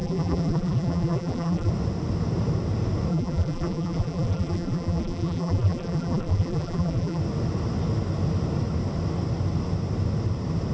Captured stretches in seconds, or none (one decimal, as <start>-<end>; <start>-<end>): 1.7-3.1; 7.2-10.7